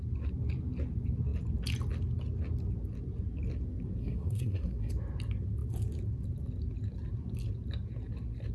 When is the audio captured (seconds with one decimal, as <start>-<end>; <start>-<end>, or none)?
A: 0.0-4.0; 4.9-8.5